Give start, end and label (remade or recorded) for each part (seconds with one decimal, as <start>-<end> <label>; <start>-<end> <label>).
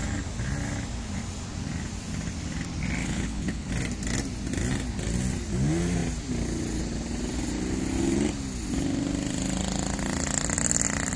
0.0-3.0 recorded; 3.0-3.7 remade; 3.7-11.2 recorded